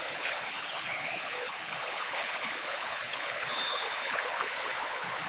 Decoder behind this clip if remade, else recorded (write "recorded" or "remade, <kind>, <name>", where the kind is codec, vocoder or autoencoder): remade, codec, HILCodec